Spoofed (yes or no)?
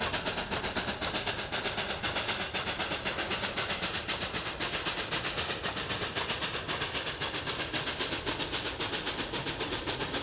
no